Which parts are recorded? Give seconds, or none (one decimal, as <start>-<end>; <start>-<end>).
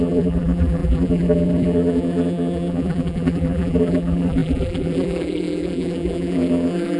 none